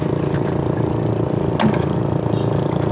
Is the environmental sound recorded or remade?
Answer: recorded